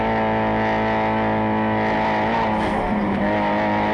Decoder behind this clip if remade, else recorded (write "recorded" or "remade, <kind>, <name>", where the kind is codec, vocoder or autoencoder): recorded